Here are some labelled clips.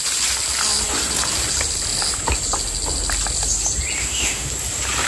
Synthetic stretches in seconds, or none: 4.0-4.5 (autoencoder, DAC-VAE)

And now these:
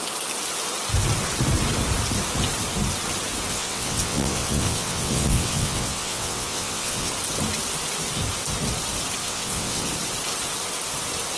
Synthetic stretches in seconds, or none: 3.5-7.1 (vocoder, WaveNeXt); 9.2-9.9